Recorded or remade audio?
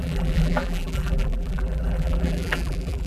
remade